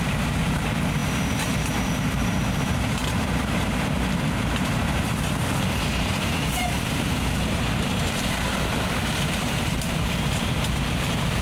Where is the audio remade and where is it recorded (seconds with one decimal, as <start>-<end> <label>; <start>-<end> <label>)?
0.0-11.4 remade